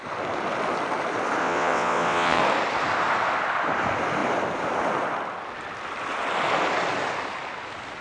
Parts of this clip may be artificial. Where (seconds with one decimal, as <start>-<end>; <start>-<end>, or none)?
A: 1.4-2.4